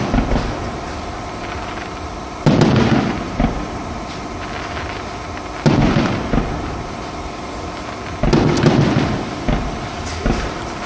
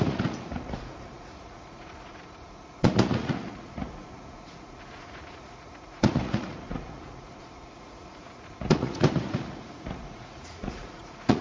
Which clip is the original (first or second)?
first